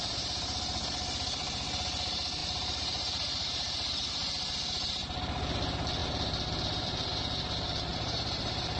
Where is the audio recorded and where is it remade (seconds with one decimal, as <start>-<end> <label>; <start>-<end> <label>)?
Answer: 0.0-2.4 recorded; 2.4-4.1 remade; 4.1-7.9 recorded; 7.9-8.8 remade